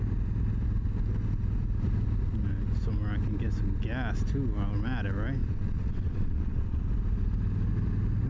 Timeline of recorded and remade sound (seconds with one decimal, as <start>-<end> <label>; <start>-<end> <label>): 0.0-5.4 recorded; 5.4-6.8 remade; 6.8-8.3 recorded